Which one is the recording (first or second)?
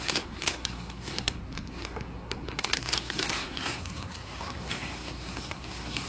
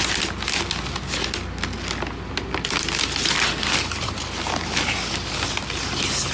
second